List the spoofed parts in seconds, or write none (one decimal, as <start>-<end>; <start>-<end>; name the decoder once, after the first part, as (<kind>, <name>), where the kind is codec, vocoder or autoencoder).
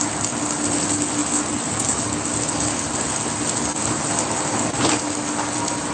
none